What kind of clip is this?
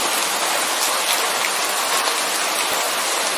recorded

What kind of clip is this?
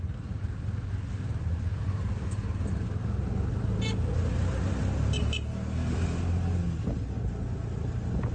recorded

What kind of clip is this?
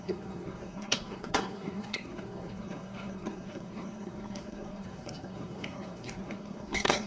remade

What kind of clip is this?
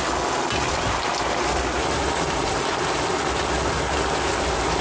recorded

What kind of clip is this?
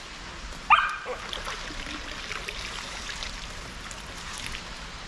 recorded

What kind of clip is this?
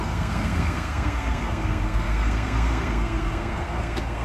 remade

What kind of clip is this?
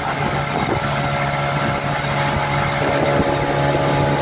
recorded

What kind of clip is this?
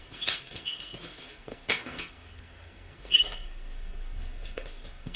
remade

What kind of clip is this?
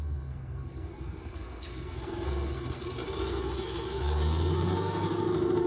remade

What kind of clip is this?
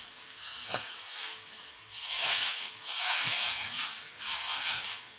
remade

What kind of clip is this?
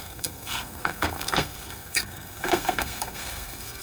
remade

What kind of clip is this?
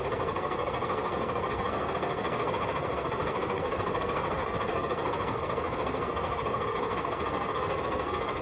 remade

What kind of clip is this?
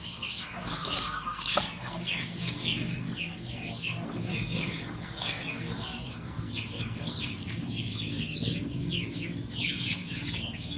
remade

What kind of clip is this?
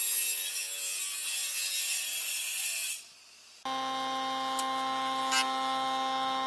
recorded